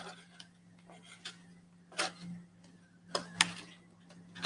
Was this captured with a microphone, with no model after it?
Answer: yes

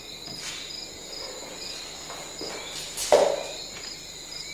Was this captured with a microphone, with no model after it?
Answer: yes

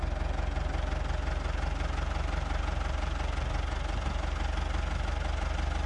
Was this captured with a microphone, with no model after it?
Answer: yes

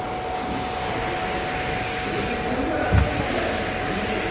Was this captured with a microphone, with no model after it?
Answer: yes